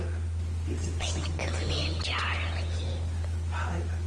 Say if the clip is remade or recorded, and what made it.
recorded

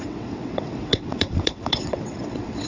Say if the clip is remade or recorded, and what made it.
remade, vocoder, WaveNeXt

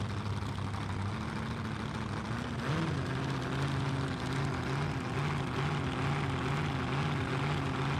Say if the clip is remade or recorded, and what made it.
recorded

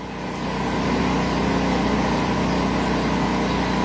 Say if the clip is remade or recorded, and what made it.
recorded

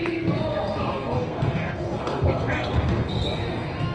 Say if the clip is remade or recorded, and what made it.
remade, codec, SNAC